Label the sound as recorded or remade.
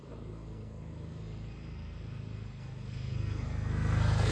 remade